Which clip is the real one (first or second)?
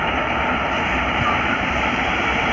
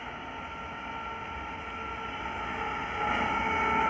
second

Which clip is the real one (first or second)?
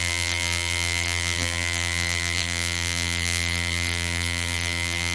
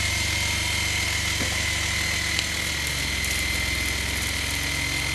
second